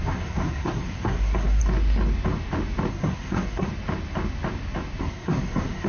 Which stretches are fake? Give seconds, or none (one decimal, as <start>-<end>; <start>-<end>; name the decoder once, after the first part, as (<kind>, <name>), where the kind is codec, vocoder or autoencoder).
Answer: 0.0-1.6 (codec, SNAC); 2.9-3.7; 5.0-5.9